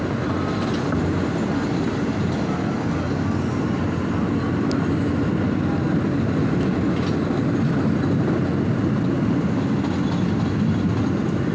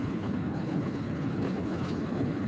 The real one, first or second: first